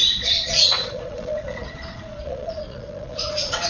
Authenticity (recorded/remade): remade